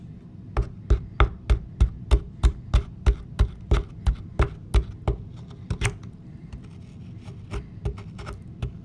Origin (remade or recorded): recorded